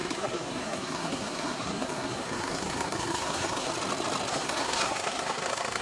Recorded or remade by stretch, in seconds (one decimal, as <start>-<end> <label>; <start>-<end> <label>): 0.0-3.7 remade; 3.7-4.3 recorded; 4.3-5.8 remade